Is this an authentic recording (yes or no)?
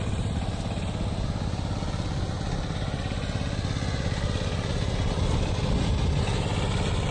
yes